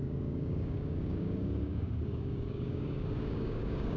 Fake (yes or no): yes